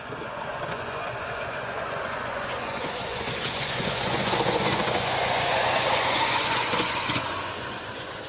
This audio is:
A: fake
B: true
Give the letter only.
A